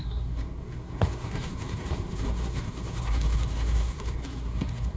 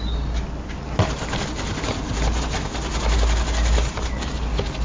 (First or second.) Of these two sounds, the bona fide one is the second